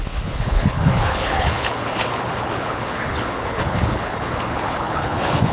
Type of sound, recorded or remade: remade